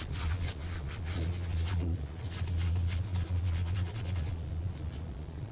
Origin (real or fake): fake